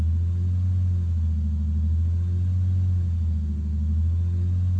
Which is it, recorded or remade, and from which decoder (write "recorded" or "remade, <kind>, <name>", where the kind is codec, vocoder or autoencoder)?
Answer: recorded